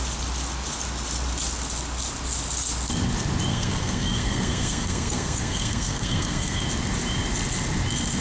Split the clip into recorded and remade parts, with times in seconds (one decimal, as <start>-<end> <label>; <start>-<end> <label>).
0.0-3.5 recorded; 3.5-6.6 remade; 6.6-8.2 recorded